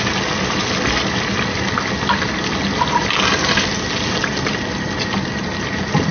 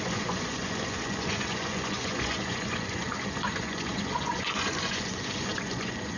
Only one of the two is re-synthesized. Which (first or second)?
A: second